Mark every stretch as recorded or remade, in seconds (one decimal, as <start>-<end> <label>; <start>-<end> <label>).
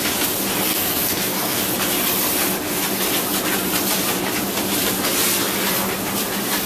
0.0-0.7 recorded; 0.7-1.6 remade; 1.6-6.7 recorded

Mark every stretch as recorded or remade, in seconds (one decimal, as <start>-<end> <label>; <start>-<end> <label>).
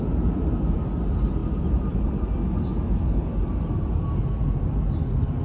0.0-5.4 recorded